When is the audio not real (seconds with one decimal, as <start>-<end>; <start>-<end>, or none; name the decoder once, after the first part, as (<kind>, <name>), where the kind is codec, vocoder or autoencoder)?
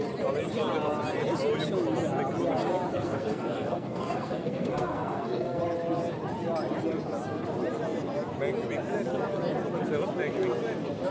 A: 2.9-5.6 (codec, SNAC)